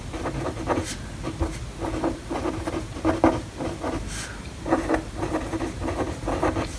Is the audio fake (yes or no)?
no